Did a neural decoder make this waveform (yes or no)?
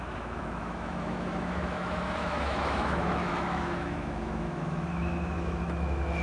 yes